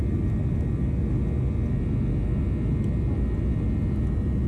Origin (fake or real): real